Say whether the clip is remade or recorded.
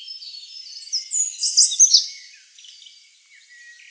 recorded